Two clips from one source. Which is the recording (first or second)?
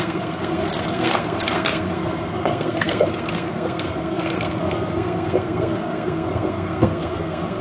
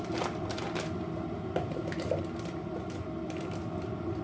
second